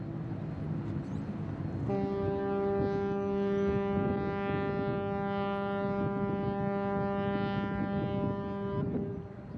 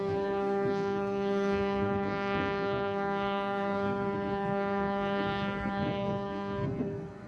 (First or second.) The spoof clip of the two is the second